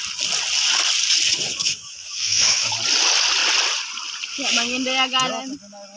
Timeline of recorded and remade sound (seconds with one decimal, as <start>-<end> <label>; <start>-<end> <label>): 0.0-1.6 recorded; 1.6-2.7 remade; 2.7-6.0 recorded